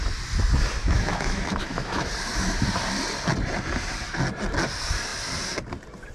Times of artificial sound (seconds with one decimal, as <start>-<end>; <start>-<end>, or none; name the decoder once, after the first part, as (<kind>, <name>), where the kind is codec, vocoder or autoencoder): 0.8-2.1 (autoencoder, DAC-VAE)